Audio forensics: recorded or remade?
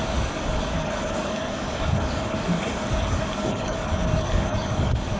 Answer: remade